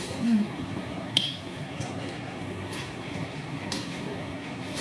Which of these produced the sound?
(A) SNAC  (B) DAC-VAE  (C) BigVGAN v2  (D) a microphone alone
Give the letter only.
A